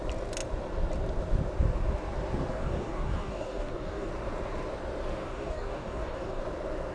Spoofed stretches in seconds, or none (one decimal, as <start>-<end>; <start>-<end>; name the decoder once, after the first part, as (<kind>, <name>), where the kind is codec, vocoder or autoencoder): 2.5-4.1 (codec, DAC); 5.2-6.4